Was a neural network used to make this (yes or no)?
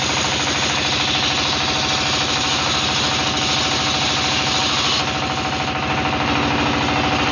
no